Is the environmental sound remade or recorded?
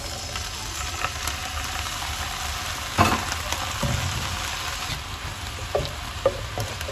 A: recorded